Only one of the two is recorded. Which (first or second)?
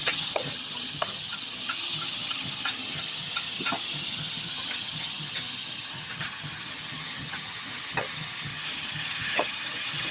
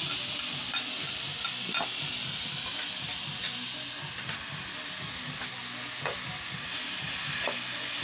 second